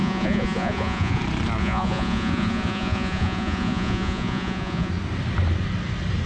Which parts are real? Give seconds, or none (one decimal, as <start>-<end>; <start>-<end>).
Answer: 1.2-1.6; 4.9-6.3